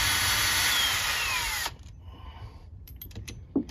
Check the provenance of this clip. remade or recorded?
remade